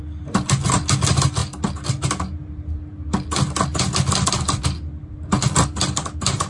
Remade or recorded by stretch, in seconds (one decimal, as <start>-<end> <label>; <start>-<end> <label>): 0.0-6.5 recorded